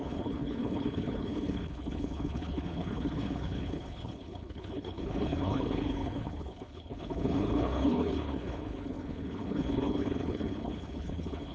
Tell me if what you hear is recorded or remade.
remade